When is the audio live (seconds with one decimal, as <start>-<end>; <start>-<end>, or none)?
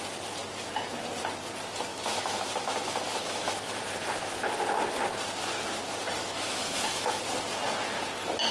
0.0-1.9; 3.8-6.2; 7.2-8.5